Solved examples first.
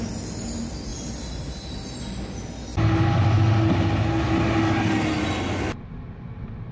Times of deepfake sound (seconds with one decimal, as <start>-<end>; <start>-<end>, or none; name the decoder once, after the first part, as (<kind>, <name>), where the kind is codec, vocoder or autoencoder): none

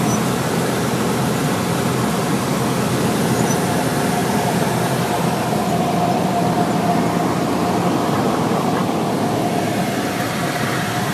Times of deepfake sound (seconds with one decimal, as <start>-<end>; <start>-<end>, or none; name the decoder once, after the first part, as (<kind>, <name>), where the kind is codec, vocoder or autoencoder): none

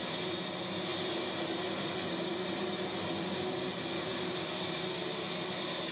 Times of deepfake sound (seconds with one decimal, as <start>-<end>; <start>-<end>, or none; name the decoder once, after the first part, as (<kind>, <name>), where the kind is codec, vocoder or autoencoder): none

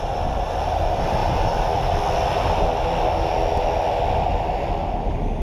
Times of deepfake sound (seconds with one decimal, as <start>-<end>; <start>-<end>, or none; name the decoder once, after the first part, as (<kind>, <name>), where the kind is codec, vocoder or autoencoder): none

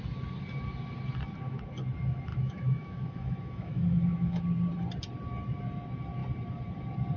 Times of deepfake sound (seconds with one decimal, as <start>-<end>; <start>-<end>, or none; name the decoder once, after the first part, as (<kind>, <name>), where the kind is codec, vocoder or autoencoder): 2.3-4.4 (autoencoder, DAC-VAE)